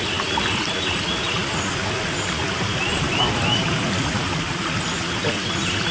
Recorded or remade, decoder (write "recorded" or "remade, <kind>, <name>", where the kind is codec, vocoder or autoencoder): recorded